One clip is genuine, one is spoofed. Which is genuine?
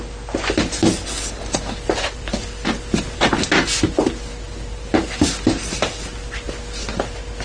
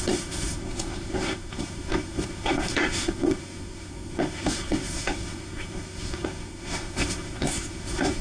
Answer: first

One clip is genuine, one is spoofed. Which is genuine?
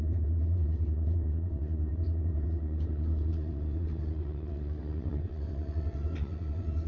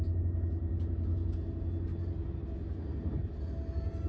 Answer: second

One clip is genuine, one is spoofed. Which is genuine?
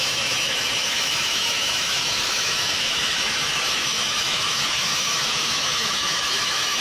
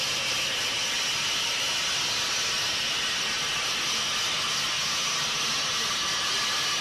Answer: second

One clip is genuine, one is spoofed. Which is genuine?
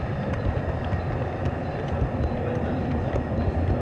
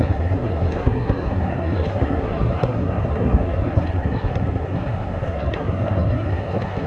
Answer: first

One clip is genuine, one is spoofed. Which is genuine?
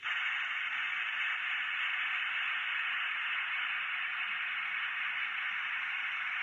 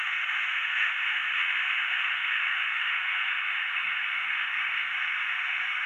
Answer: first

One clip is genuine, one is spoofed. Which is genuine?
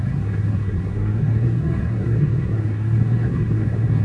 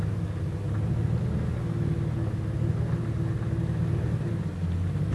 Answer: second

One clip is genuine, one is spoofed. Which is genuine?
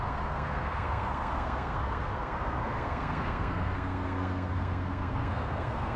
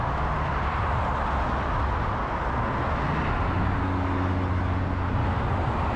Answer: second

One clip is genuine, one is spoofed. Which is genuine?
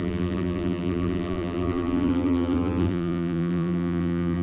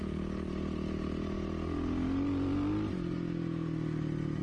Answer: second